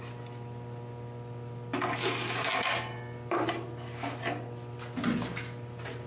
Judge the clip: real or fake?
real